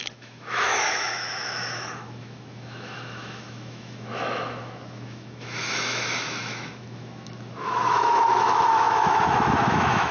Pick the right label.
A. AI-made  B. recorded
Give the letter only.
A